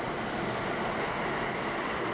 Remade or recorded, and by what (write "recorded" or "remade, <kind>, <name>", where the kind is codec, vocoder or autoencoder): recorded